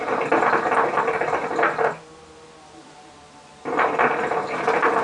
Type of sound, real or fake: real